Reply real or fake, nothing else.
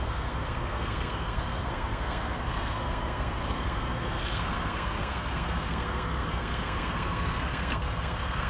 fake